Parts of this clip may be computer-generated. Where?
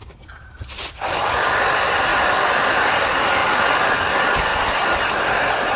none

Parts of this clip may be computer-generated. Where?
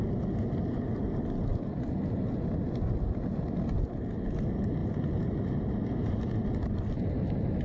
4.8-6.2 (vocoder, BigVGAN v2)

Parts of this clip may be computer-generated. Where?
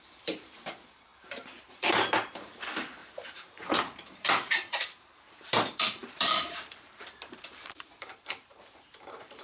0.0-9.4 (vocoder, BigVGAN v2)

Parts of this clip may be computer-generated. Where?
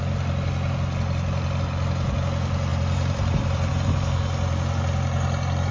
2.7-3.7 (vocoder, BigVGAN v2)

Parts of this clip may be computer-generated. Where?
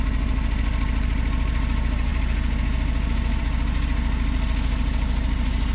none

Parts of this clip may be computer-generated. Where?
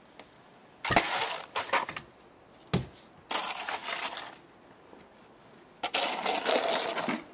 none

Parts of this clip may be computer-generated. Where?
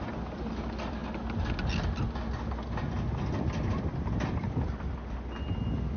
0.0-1.0 (vocoder, BigVGAN v2); 3.7-6.0